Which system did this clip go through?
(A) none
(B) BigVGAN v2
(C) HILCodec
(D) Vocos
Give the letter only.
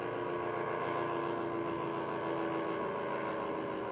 A